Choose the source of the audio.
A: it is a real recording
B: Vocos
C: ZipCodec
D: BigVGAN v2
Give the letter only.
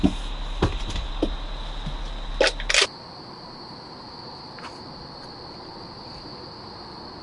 A